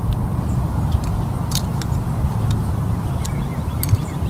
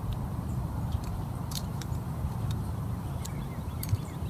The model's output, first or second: second